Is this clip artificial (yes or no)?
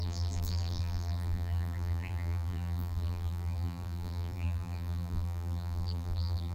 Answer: yes